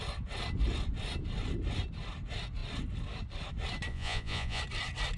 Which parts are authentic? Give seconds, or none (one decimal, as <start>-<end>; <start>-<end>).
0.0-3.9; 4.6-5.2